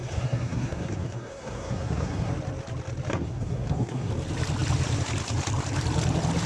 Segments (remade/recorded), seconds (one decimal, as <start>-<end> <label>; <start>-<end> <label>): 0.0-2.3 remade; 2.3-3.1 recorded; 3.1-4.1 remade; 4.1-6.5 recorded